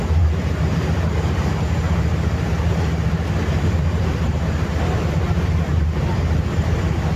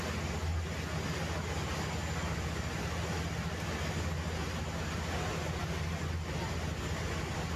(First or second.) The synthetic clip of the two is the first